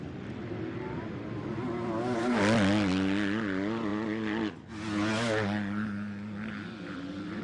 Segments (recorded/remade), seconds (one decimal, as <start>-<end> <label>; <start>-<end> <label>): 0.0-7.4 recorded